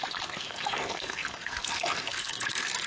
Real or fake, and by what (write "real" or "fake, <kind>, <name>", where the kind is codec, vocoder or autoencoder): fake, codec, SNAC